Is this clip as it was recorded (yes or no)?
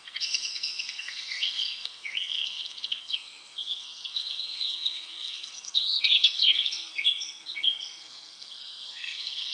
no